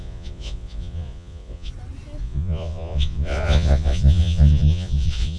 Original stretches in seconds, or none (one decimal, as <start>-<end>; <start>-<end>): 1.7-2.2